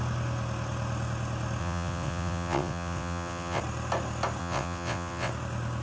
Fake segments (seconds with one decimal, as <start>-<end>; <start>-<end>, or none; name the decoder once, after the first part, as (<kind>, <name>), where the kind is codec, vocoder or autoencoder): 1.6-3.6 (vocoder, WaveNeXt); 4.4-5.3